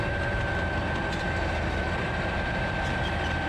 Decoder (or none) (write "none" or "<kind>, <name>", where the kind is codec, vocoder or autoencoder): vocoder, BigVGAN v2